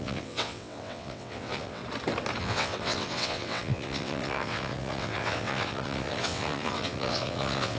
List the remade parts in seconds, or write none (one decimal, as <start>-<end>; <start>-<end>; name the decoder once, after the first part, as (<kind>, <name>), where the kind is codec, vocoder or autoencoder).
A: 0.0-1.8 (vocoder, WaveNeXt); 2.4-7.8